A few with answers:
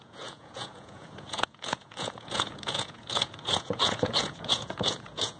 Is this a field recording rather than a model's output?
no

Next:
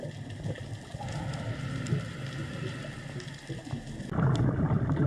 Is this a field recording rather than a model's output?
yes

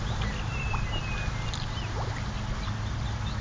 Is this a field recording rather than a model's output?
yes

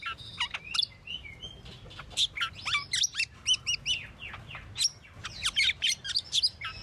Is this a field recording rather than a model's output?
yes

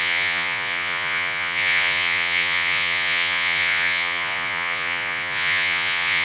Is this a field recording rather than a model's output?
no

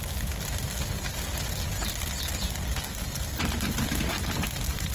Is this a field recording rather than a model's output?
yes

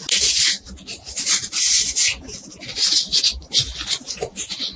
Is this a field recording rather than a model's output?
yes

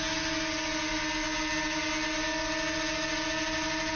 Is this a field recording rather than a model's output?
yes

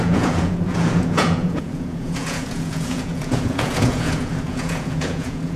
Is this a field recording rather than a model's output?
no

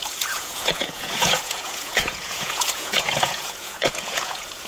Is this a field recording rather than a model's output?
no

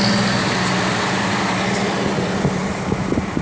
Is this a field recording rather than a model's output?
yes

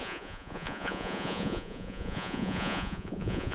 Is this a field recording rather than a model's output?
no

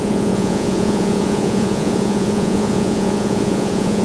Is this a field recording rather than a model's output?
no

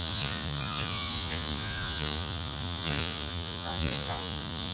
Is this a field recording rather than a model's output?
no